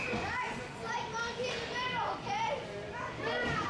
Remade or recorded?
recorded